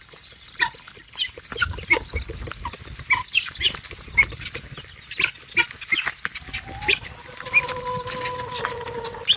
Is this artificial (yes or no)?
no